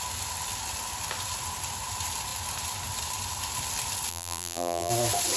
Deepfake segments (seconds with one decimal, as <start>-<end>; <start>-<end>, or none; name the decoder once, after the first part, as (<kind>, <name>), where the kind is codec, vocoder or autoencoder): 4.1-4.9 (vocoder, BigVGAN v2)